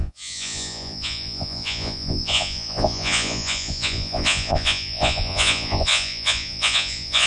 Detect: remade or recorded remade